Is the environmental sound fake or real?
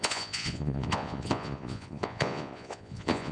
fake